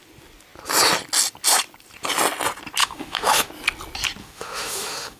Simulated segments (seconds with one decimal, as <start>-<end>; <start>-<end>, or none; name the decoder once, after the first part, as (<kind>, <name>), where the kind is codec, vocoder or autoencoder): 2.8-3.5 (autoencoder, DAC-VAE); 4.2-5.2